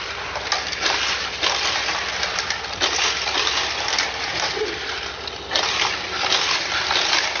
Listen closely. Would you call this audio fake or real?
real